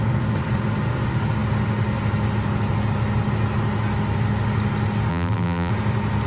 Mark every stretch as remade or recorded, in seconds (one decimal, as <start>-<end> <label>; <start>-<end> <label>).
0.0-5.1 recorded; 5.1-5.7 remade; 5.7-6.3 recorded